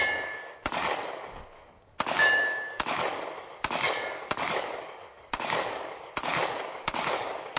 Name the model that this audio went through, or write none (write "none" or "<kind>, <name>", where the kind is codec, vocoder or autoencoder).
codec, DAC